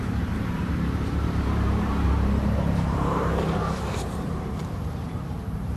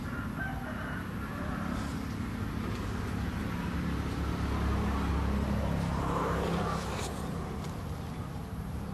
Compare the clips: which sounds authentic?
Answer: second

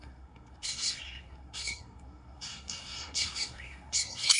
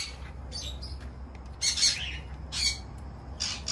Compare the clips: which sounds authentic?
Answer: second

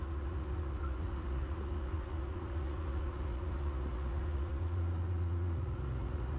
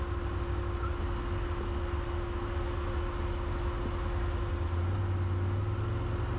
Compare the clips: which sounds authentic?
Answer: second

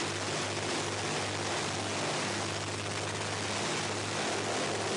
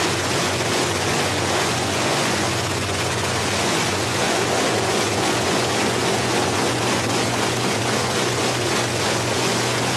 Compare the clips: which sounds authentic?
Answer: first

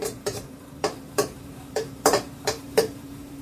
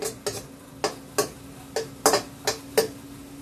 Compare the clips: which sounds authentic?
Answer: second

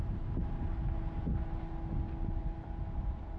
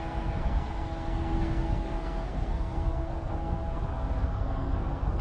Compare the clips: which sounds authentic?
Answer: first